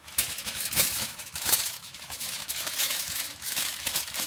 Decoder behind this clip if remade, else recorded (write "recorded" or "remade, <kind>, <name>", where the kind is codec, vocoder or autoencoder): remade, autoencoder, DAC-VAE